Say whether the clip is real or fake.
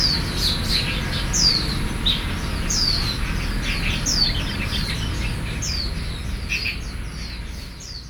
real